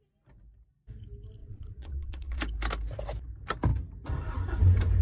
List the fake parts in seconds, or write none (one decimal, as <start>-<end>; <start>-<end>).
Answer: 1.4-2.4